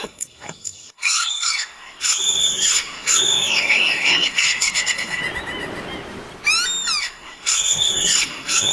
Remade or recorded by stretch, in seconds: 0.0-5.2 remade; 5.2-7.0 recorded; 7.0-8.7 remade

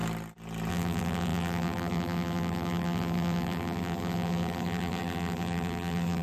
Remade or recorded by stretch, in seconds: 0.0-0.7 recorded; 0.7-6.2 remade

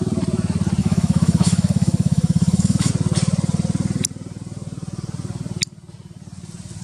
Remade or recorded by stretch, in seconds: 0.0-0.8 recorded; 0.8-2.9 remade; 2.9-6.8 recorded